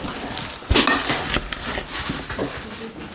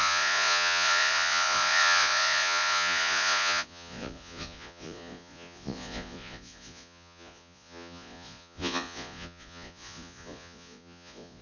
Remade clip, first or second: second